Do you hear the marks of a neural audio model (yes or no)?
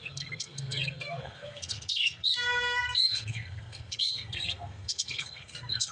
yes